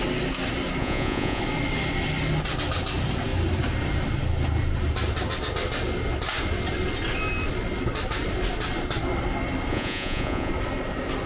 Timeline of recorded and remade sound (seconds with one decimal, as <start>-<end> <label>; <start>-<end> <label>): 0.0-0.8 recorded; 0.8-1.4 remade; 1.4-9.7 recorded; 9.7-10.5 remade; 10.5-11.3 recorded